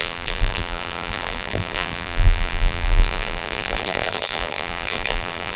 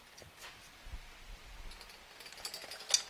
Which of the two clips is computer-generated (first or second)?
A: first